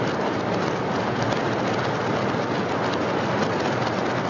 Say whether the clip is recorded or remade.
recorded